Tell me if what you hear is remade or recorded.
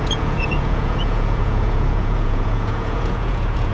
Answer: remade